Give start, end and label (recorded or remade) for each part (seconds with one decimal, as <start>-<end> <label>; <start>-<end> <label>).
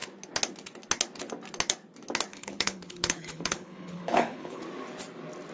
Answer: 0.0-2.3 recorded; 2.3-4.6 remade; 4.6-5.5 recorded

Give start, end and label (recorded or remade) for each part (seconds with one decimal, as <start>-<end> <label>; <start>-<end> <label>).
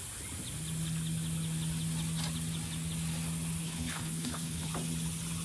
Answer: 0.0-3.6 recorded; 3.6-4.7 remade; 4.7-5.4 recorded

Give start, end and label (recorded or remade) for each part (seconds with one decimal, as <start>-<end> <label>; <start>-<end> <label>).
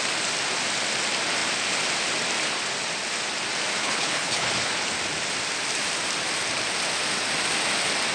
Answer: 0.0-3.8 recorded; 3.8-4.5 remade; 4.5-8.1 recorded